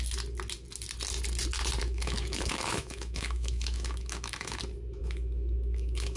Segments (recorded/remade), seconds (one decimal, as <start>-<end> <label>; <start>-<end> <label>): 0.0-1.8 recorded; 1.8-4.6 remade; 4.6-5.0 recorded; 5.0-6.2 remade